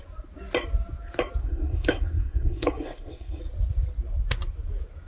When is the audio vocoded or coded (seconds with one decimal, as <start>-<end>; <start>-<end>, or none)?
1.4-3.4